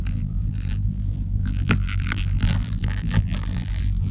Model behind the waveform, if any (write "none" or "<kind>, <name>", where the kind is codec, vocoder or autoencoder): vocoder, BigVGAN v2